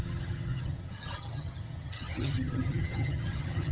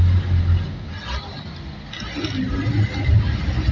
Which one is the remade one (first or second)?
first